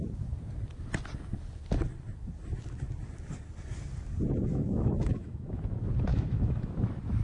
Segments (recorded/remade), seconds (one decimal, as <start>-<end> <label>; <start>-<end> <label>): 0.0-4.5 recorded; 4.5-5.6 remade; 5.6-6.1 recorded; 6.1-6.7 remade; 6.7-7.2 recorded